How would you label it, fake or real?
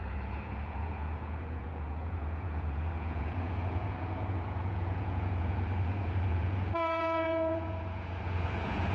fake